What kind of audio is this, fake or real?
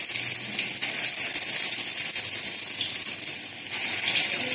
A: real